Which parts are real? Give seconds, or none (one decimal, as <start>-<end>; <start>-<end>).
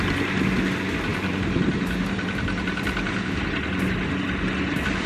0.0-1.1; 3.5-5.1